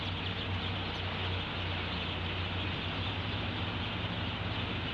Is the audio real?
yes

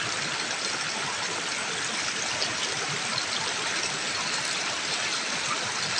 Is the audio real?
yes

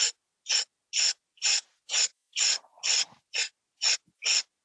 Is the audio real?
yes